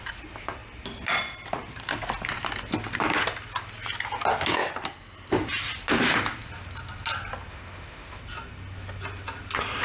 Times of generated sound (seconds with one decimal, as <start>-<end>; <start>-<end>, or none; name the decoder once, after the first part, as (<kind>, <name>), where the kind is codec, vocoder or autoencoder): 7.5-8.2 (autoencoder, DAC-VAE)